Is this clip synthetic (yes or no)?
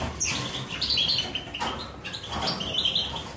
no